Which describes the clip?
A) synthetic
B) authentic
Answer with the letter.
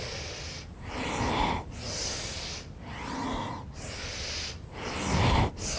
B